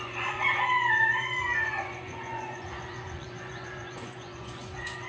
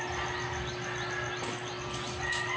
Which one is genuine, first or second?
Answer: second